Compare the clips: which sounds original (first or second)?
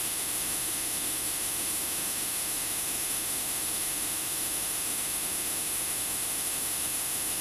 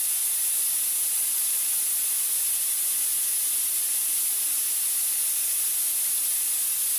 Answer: second